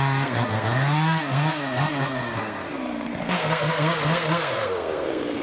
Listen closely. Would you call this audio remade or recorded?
remade